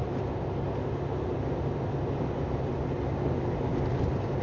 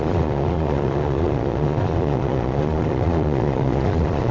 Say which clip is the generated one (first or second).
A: second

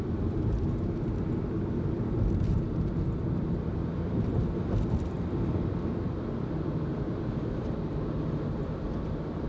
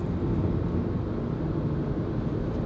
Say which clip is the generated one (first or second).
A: first